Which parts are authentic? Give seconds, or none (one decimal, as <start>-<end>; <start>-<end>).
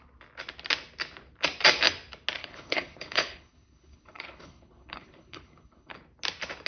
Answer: 0.0-2.4; 5.9-6.7